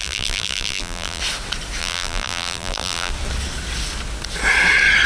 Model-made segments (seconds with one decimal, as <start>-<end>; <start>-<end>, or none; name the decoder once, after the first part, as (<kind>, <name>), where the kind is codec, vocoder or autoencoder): 0.0-1.2 (vocoder, BigVGAN v2); 1.8-3.1